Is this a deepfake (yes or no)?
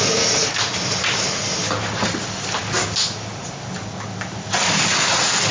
no